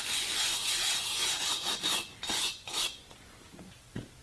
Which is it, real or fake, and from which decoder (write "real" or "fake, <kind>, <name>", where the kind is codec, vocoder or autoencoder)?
fake, vocoder, Vocos